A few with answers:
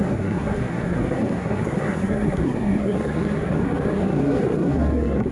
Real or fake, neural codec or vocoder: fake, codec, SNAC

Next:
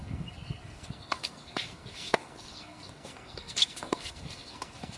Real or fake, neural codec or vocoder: fake, codec, SNAC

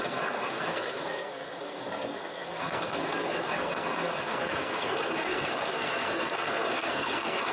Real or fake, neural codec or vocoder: fake, codec, SNAC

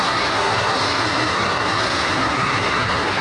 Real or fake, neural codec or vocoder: fake, codec, SNAC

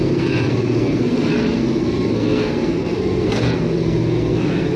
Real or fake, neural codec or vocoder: fake, codec, SNAC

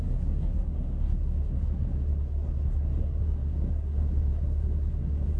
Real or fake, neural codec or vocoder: fake, codec, SNAC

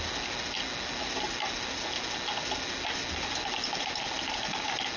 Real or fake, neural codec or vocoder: real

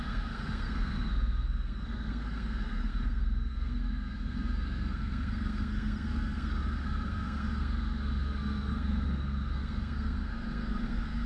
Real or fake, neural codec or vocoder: fake, codec, SNAC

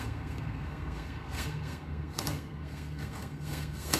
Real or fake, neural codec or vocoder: fake, codec, SNAC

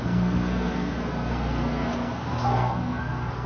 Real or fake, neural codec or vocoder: fake, codec, SNAC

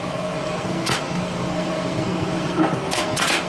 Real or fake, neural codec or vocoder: fake, codec, SNAC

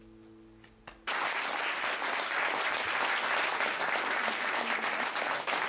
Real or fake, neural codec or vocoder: real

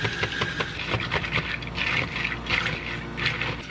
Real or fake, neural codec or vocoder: real